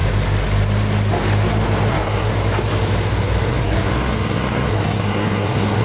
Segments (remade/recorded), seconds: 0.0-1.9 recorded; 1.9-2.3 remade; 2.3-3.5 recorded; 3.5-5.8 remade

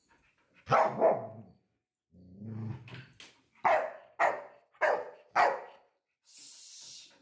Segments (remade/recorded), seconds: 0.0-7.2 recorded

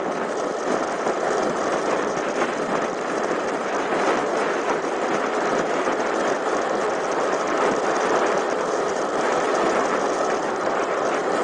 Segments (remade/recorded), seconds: 0.0-4.2 recorded; 4.2-4.9 remade; 4.9-11.4 recorded

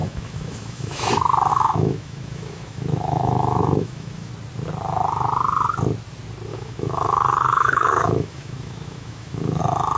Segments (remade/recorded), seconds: 0.0-1.1 remade; 1.1-1.5 recorded; 1.5-4.3 remade; 4.3-6.5 recorded; 6.5-9.6 remade; 9.6-10.0 recorded

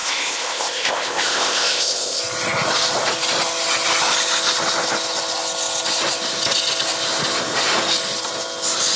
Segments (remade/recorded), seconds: 0.0-2.2 remade; 2.2-9.0 recorded